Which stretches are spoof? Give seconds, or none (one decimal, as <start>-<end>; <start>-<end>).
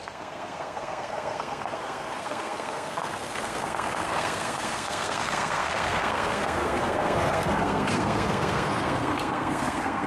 0.0-10.1